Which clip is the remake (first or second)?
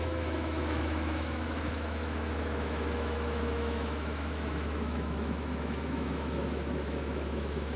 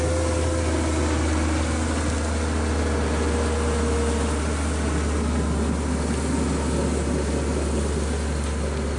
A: first